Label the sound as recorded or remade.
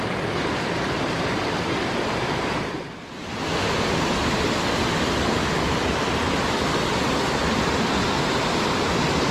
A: recorded